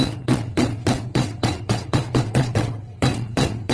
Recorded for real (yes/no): no